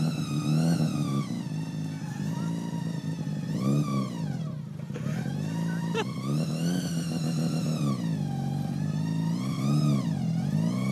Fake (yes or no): no